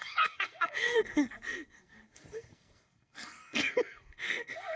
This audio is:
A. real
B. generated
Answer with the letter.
B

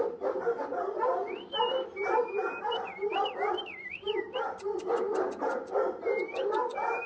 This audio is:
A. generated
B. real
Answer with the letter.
B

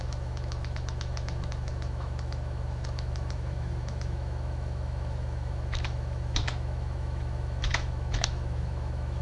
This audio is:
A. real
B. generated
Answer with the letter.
B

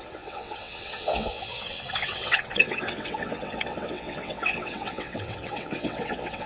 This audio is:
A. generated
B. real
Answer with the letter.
A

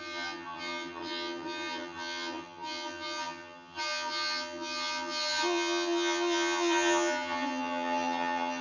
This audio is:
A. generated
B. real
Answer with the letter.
A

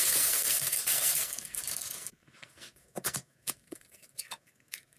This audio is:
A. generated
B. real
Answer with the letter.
A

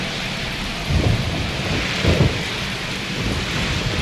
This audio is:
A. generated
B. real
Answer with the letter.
B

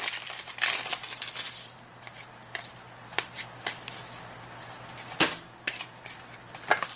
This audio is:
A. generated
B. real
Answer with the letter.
B